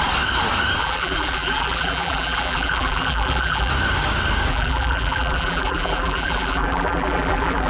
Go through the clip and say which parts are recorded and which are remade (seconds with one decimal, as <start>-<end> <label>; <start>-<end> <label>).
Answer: 0.0-0.8 recorded; 0.8-3.7 remade; 3.7-4.5 recorded; 4.5-7.7 remade